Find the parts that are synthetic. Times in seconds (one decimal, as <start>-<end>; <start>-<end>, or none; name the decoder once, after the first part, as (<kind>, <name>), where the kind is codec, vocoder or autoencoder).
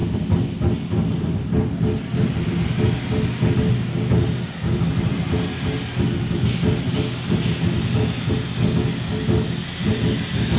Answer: none